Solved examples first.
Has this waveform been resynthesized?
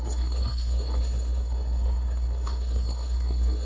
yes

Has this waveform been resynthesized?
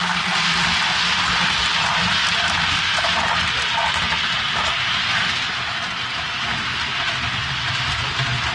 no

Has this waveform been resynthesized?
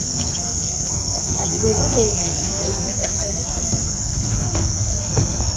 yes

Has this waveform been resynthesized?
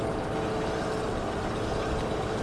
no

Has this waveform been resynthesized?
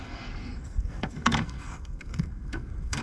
yes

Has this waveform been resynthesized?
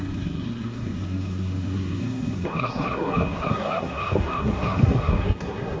yes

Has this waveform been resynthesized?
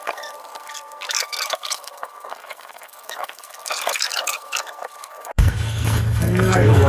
yes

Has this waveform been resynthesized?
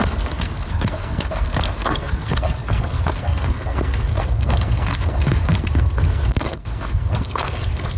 yes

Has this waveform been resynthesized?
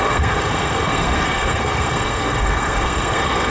yes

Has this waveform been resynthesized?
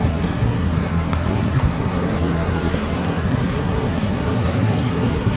yes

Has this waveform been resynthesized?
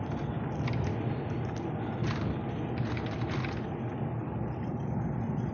no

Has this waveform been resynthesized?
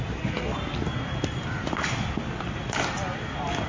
no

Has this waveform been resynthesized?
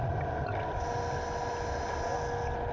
no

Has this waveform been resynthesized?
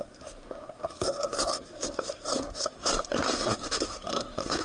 yes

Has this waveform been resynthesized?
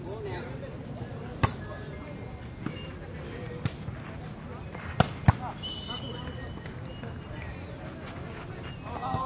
no